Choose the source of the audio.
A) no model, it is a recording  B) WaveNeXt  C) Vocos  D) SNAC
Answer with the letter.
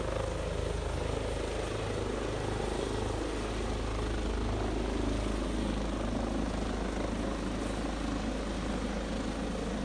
A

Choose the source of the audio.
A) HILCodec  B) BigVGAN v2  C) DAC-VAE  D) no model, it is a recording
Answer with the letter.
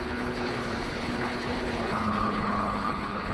A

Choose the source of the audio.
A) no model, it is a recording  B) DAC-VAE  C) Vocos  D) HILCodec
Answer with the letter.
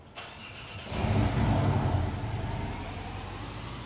A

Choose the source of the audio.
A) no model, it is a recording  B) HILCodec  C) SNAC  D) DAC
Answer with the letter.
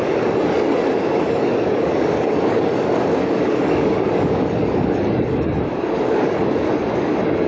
D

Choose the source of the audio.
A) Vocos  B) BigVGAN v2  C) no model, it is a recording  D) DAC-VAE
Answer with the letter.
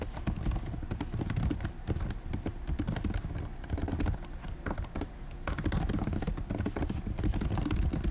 C